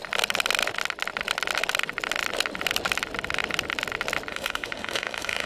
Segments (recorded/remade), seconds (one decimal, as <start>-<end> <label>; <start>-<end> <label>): 0.0-4.3 recorded; 4.3-5.5 remade